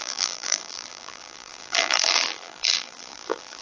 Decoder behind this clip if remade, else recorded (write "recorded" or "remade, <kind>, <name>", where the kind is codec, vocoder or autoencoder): remade, vocoder, BigVGAN v2